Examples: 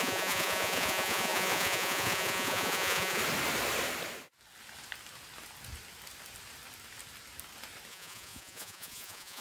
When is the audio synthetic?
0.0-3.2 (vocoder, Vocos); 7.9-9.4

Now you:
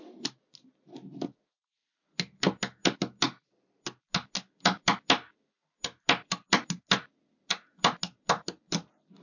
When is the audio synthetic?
none

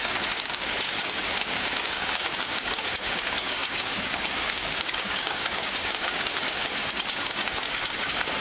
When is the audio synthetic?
0.0-8.4 (codec, DAC)

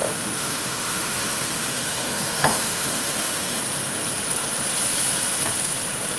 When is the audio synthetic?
0.0-3.6 (autoencoder, DAC-VAE)

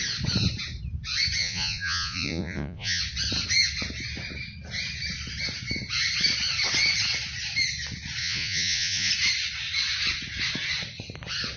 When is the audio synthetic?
1.4-3.0 (vocoder, Vocos); 8.2-9.1